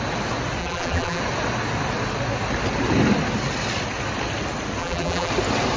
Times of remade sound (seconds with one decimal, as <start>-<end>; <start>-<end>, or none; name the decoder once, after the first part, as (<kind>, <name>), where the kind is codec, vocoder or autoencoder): 0.6-1.2 (vocoder, BigVGAN v2); 4.8-5.3